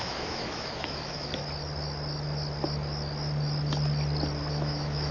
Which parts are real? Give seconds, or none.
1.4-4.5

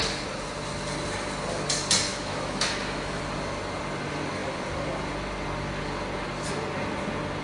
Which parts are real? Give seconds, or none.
0.0-2.1; 3.2-7.4